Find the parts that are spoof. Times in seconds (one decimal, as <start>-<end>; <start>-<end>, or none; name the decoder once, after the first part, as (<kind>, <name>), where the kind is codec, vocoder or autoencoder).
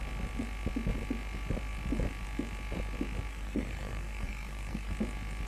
3.3-4.9 (codec, SNAC)